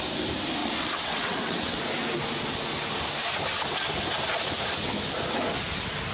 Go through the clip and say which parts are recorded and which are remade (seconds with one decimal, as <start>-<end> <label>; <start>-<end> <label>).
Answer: 0.0-0.6 recorded; 0.6-1.8 remade; 1.8-6.1 recorded